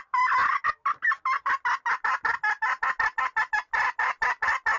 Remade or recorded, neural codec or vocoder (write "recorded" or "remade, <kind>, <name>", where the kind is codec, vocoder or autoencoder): recorded